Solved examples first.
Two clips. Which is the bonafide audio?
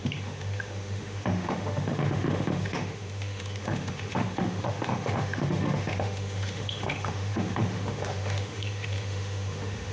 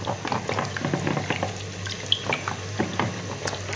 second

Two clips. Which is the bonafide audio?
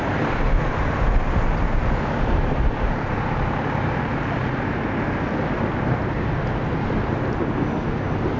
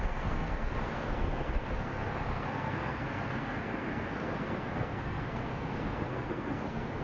first